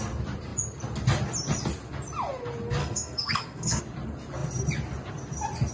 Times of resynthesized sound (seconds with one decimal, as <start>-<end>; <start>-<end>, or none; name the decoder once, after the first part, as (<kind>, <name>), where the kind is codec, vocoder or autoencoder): 2.8-3.8 (codec, SNAC)